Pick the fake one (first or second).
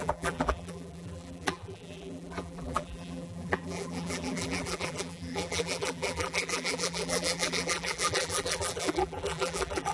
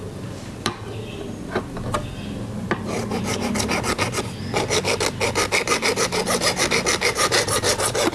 first